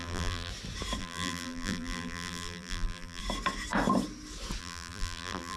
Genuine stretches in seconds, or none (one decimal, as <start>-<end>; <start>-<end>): 0.5-1.0; 3.2-4.6